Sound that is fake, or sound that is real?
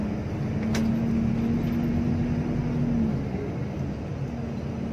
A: real